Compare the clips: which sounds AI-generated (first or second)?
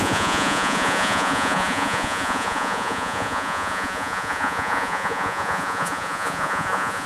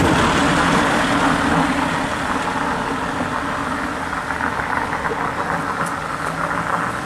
first